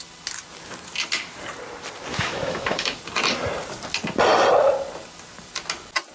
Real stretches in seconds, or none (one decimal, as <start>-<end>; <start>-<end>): 0.0-2.1; 3.0-6.1